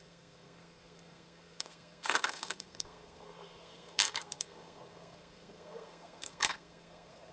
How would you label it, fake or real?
fake